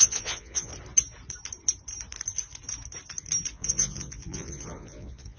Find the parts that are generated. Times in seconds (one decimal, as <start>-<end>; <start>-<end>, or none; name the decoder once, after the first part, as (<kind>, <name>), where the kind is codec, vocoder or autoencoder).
0.0-0.7 (vocoder, Vocos); 3.5-5.4